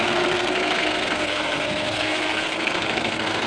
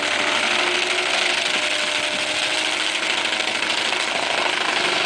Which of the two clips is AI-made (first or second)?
first